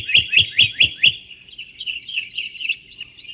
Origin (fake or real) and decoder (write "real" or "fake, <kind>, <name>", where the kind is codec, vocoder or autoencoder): real